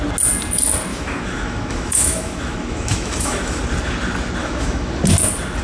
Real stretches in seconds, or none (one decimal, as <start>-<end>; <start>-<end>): 0.0-0.9; 3.6-4.4; 5.0-5.6